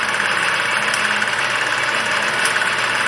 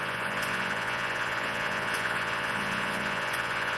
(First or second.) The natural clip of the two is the first